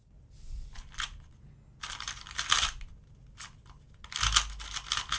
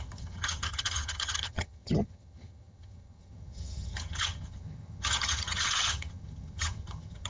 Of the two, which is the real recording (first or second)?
first